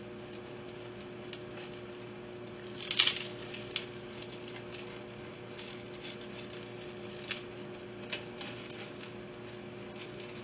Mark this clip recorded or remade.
recorded